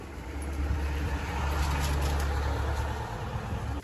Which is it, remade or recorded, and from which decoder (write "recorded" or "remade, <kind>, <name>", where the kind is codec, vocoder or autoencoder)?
recorded